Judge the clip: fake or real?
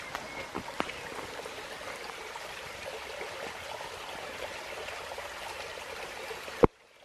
real